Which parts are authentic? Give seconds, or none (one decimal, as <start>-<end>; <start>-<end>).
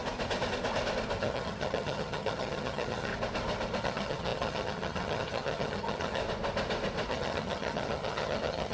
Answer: 0.0-1.2; 3.1-3.8; 6.2-7.1